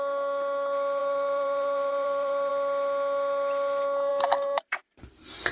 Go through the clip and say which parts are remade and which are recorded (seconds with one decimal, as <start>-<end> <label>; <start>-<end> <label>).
0.0-1.0 recorded; 1.0-2.5 remade; 2.5-4.1 recorded; 4.1-5.0 remade; 5.0-5.5 recorded